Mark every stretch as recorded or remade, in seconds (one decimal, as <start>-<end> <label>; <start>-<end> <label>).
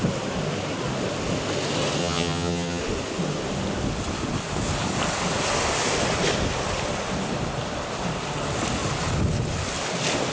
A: 0.0-2.0 recorded; 2.0-2.8 remade; 2.8-10.3 recorded